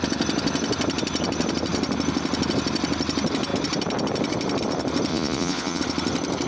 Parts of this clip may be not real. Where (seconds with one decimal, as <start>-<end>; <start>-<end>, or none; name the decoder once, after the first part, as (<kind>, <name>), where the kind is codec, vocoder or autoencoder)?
5.1-5.8 (vocoder, Vocos)